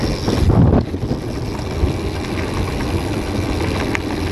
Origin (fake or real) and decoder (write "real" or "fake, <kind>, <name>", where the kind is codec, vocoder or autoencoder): real